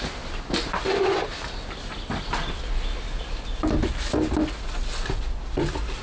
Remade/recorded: recorded